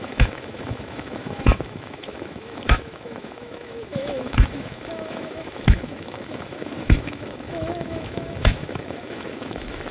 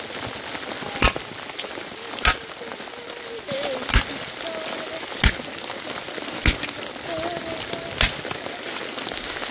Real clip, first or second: second